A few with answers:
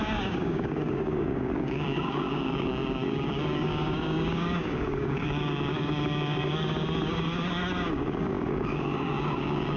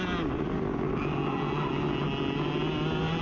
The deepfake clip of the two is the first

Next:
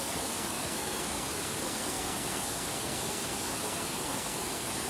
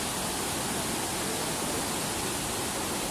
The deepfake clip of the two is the first